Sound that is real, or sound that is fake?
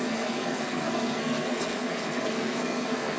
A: fake